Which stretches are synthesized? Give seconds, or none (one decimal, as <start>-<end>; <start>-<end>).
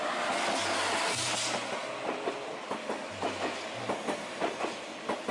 none